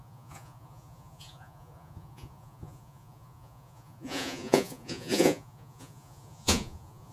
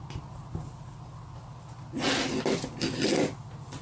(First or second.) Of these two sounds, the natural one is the second